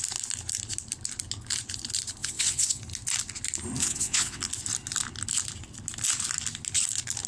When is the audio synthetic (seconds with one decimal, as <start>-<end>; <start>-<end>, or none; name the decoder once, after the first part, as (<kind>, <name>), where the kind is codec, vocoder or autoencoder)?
2.2-2.8 (vocoder, WaveNeXt); 3.8-4.4